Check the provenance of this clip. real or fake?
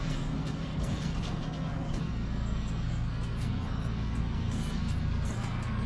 fake